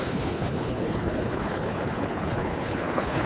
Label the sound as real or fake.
fake